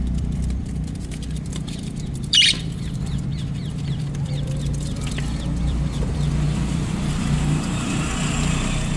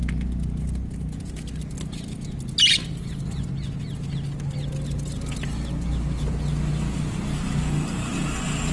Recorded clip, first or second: second